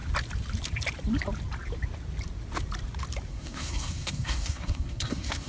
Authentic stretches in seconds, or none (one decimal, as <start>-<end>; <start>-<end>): 0.0-3.3